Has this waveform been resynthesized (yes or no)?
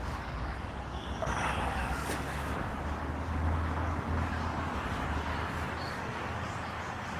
yes